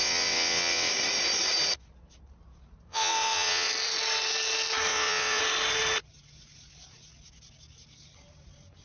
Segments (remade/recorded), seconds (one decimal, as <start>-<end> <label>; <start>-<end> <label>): 0.0-0.9 remade; 0.9-2.9 recorded; 2.9-3.7 remade; 3.7-4.9 recorded; 4.9-5.4 remade; 5.4-8.8 recorded